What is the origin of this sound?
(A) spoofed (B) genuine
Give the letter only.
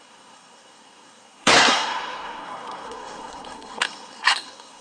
A